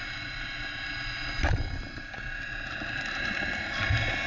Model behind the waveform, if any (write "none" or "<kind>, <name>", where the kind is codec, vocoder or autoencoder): none